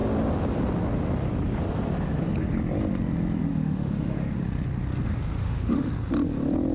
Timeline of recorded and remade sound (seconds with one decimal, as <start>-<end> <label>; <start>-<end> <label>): 0.0-3.5 recorded; 3.5-4.4 remade; 4.4-5.4 recorded; 5.4-5.9 remade; 5.9-6.7 recorded